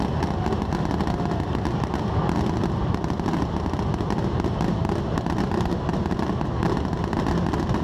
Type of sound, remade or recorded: recorded